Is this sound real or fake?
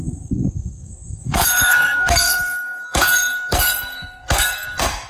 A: fake